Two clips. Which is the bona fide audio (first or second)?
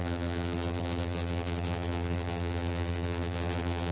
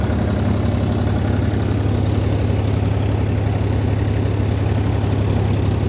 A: second